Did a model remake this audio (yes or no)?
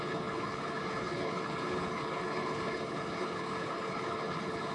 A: yes